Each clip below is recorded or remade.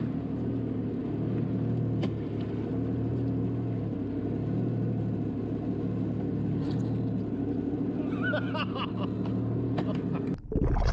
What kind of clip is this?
recorded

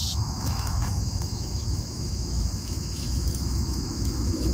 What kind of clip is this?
remade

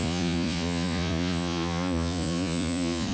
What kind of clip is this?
remade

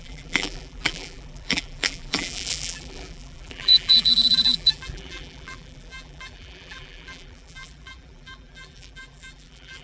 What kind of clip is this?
remade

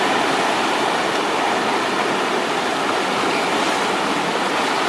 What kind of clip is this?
recorded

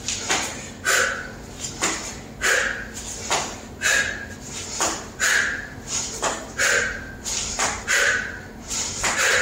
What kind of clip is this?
recorded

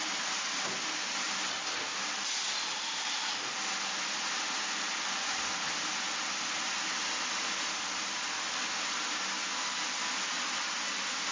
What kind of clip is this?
recorded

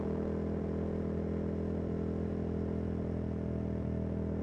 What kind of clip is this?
recorded